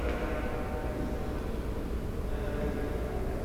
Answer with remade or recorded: recorded